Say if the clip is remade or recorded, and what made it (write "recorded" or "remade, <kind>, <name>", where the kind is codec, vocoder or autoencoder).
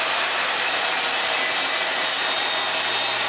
recorded